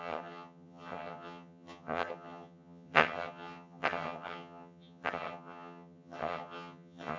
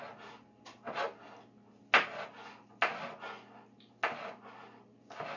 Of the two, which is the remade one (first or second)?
first